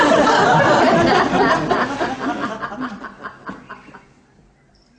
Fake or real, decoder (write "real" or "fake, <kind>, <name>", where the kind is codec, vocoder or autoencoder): real